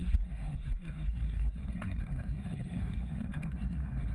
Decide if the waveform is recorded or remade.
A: remade